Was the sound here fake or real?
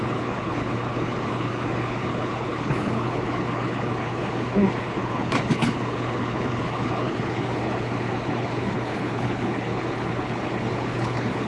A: fake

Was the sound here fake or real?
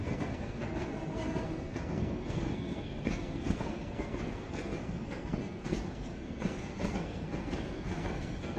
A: fake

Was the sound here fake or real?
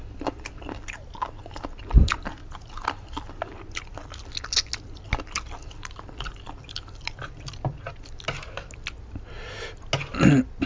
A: real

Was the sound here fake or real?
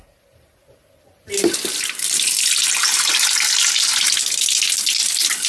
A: real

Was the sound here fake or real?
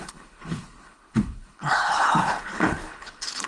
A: fake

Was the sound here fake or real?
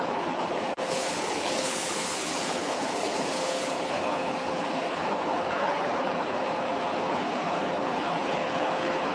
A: fake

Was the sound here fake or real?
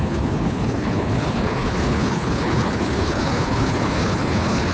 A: fake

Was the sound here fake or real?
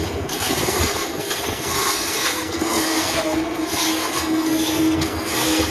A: fake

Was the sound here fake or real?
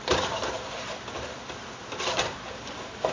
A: fake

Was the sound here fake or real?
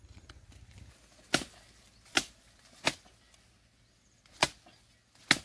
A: real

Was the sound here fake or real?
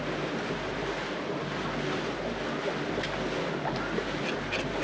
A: real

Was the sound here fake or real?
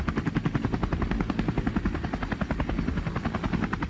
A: real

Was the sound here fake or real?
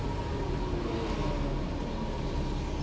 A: real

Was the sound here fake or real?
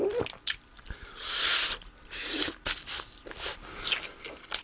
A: real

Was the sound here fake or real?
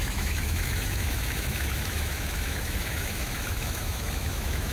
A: fake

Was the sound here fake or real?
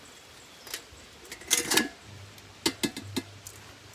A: real